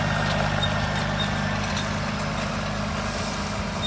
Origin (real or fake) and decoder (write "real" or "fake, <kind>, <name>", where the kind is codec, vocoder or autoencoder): real